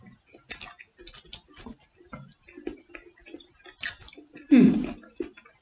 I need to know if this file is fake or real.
real